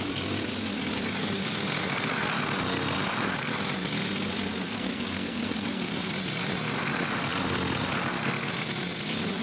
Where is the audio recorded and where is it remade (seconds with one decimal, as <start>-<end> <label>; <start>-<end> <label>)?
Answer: 0.0-4.6 recorded; 4.6-6.1 remade; 6.1-9.4 recorded